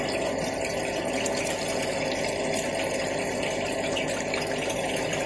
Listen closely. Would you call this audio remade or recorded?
recorded